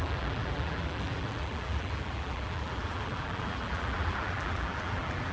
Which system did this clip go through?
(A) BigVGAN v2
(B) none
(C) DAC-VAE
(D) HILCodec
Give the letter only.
A